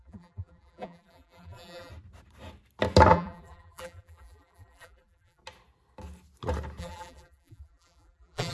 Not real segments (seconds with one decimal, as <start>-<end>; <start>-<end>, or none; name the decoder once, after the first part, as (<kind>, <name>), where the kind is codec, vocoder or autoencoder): 0.0-1.9 (vocoder, BigVGAN v2); 3.1-5.4; 6.8-8.5